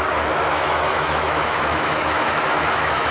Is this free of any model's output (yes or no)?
no